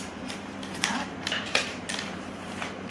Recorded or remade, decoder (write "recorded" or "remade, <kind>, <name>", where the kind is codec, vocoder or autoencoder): remade, vocoder, BigVGAN v2